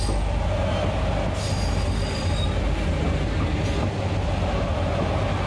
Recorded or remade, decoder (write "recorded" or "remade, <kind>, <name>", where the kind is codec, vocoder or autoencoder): recorded